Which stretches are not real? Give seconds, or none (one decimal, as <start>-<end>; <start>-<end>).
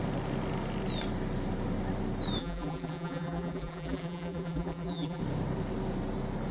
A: 2.4-5.2